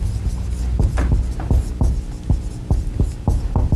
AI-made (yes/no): no